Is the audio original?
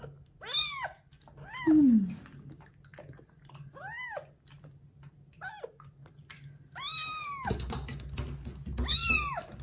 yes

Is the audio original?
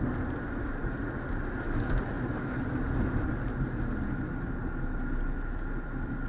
yes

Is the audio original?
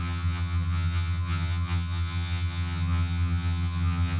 no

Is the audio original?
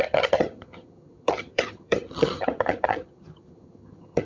no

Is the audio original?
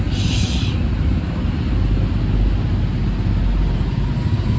yes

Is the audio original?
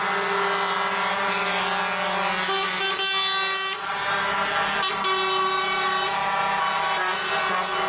yes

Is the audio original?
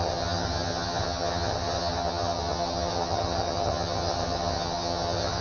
no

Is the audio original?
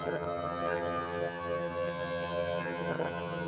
no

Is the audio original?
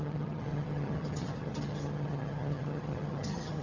no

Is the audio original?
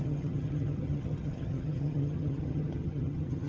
no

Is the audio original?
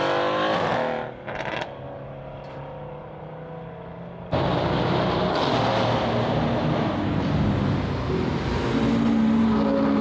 yes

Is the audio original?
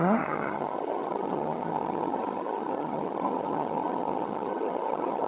no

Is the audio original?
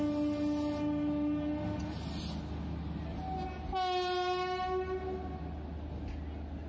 yes